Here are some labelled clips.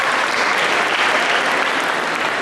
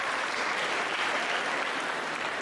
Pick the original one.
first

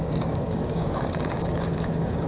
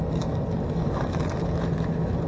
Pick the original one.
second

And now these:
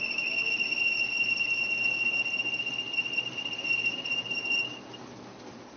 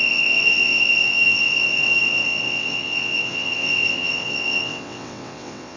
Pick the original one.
first